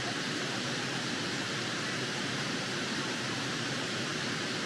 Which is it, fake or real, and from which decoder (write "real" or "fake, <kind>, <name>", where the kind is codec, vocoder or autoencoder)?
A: fake, vocoder, BigVGAN v2